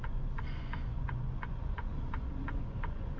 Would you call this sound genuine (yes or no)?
no